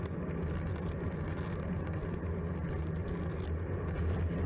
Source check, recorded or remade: recorded